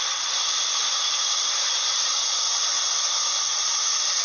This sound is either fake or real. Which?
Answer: real